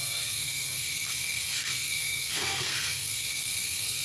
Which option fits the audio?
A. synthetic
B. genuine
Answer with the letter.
A